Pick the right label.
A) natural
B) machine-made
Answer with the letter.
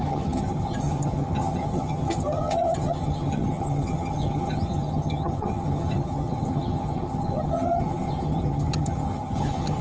B